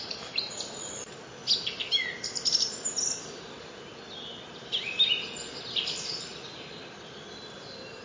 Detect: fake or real real